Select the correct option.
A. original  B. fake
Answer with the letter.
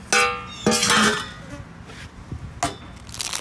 A